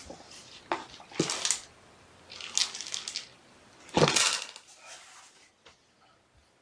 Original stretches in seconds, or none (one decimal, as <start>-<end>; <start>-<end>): 0.0-6.6